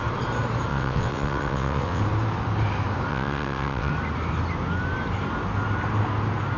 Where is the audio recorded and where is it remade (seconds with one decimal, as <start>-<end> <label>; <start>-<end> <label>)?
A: 0.0-0.7 recorded; 0.7-2.0 remade; 2.0-3.1 recorded; 3.1-3.9 remade; 3.9-6.6 recorded